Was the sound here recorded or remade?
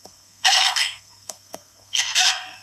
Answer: remade